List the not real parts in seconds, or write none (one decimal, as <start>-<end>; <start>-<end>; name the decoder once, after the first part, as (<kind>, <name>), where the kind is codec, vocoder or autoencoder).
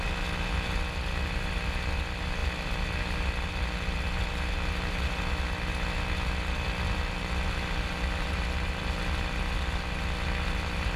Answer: none